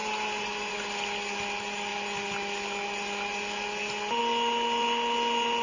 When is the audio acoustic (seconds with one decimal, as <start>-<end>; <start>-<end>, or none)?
0.0-5.6

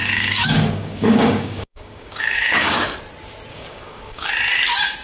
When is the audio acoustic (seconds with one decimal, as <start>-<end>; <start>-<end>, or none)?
3.0-3.5; 4.3-5.0

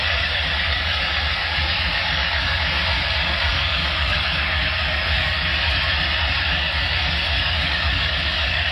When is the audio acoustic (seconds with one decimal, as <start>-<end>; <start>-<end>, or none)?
5.5-6.3

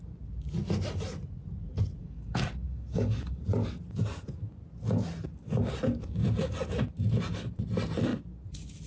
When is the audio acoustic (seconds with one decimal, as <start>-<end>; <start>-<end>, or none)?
0.0-2.0; 3.4-8.9

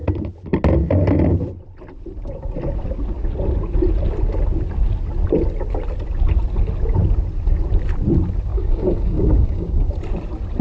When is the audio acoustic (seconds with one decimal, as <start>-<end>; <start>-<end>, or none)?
0.0-8.5; 9.9-10.6

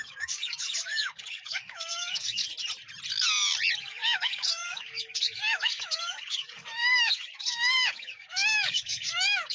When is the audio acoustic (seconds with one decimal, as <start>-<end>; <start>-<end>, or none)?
2.4-3.8